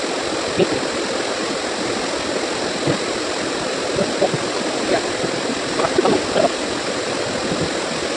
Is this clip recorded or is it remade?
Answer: recorded